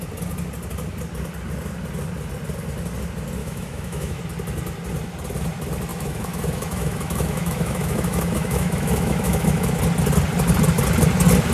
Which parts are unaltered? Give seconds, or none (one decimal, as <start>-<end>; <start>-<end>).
0.0-3.4; 4.2-5.9; 9.8-11.5